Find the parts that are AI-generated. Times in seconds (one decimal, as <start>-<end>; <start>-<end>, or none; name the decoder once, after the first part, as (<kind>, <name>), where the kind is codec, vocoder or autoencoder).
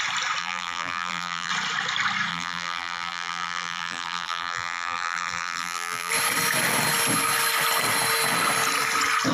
0.4-1.5 (vocoder, BigVGAN v2); 2.3-6.1